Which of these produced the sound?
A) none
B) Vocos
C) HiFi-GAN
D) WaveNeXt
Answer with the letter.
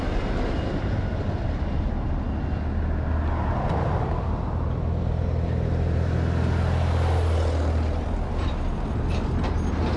A